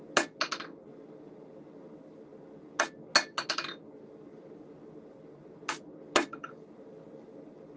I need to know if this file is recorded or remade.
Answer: recorded